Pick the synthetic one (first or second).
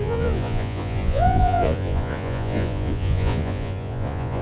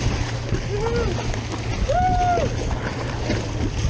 first